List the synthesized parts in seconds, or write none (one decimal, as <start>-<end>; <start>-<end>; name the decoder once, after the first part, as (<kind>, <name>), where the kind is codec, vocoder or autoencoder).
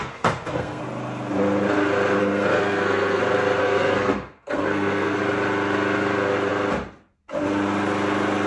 0.0-0.8 (codec, SNAC); 2.2-3.2; 3.6-5.2